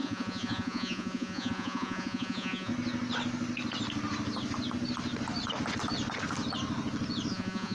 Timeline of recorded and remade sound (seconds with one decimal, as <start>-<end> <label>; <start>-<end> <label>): 0.0-2.7 remade; 2.7-7.3 recorded; 7.3-7.7 remade